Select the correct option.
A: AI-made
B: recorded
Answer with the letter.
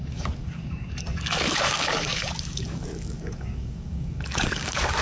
A